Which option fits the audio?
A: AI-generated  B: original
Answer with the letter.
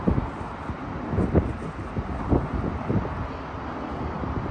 B